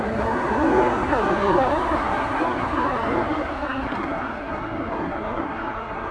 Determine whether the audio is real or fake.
fake